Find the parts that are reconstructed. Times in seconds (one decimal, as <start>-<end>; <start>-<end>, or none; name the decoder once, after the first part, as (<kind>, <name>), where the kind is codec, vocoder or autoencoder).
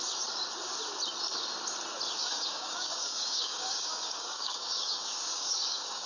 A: 2.2-6.1 (codec, DAC)